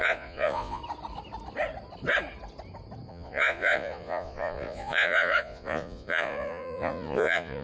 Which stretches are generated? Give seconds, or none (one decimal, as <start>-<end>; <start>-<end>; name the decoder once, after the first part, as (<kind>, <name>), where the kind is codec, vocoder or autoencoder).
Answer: 0.0-0.8 (vocoder, Vocos); 3.1-7.6